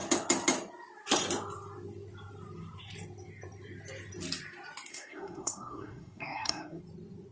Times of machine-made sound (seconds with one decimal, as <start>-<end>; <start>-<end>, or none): 4.9-6.8

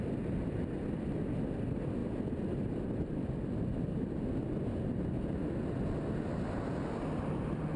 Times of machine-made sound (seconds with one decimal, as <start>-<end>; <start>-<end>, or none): none